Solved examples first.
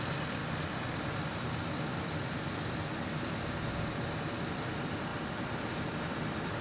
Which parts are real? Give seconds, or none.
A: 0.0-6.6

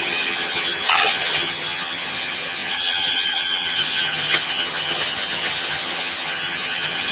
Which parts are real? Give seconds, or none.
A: none